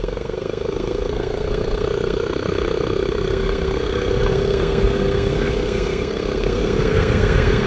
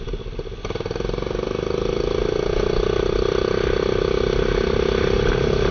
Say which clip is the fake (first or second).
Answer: first